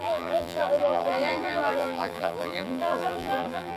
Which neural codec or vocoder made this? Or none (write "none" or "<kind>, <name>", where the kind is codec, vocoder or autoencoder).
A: vocoder, BigVGAN v2